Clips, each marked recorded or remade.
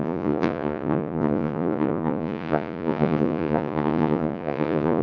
remade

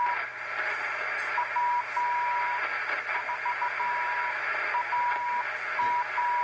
recorded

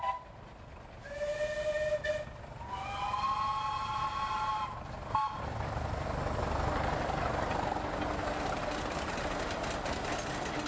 recorded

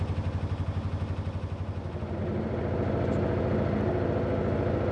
recorded